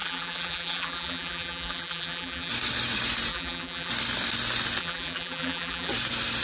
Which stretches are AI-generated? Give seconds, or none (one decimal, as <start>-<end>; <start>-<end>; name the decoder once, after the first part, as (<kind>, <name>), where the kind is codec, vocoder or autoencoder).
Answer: 0.0-2.5 (vocoder, BigVGAN v2); 3.3-3.9; 4.8-5.9